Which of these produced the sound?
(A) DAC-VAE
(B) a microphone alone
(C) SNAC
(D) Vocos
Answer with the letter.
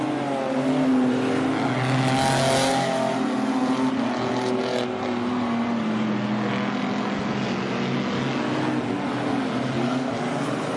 B